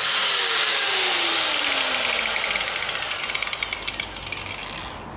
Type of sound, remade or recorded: recorded